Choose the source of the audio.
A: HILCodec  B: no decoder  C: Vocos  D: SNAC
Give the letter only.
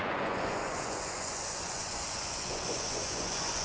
C